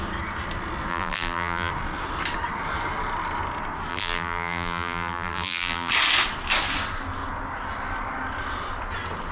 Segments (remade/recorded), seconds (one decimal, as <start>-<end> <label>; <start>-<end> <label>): 0.0-0.9 recorded; 0.9-1.7 remade; 1.7-3.9 recorded; 3.9-5.9 remade; 5.9-9.3 recorded